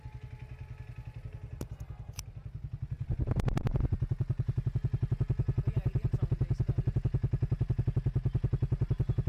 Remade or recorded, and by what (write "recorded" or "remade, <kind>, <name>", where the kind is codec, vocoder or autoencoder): recorded